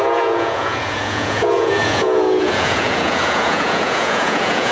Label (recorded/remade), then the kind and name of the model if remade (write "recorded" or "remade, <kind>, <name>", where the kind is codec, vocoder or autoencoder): remade, vocoder, Vocos